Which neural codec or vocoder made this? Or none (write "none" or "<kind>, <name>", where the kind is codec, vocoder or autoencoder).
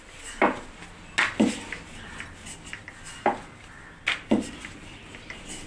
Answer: none